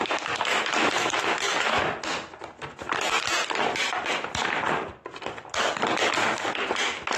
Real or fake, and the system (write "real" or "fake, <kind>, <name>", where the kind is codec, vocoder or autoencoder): fake, vocoder, BigVGAN v2